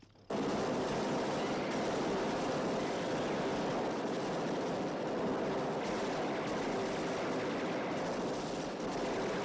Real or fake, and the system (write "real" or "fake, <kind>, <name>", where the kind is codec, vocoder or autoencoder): real